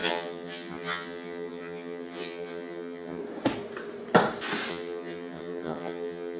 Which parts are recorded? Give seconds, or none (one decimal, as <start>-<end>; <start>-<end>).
3.2-4.7